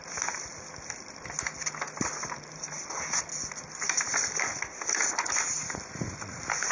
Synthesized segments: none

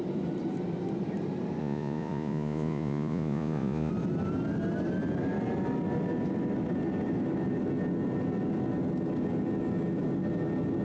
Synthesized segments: 1.6-3.9 (vocoder, Vocos)

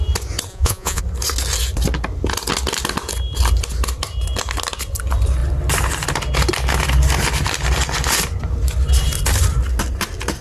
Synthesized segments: 0.5-1.0 (vocoder, Vocos)

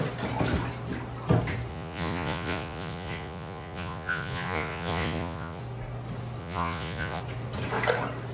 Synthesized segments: 1.7-5.6 (vocoder, Vocos); 6.4-7.2

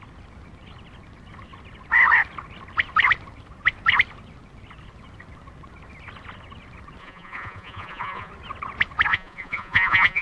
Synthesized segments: 7.0-8.3 (vocoder, Vocos); 9.1-10.2

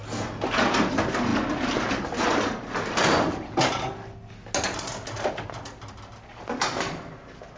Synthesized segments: none

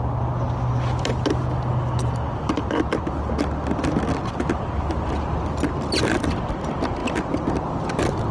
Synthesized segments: none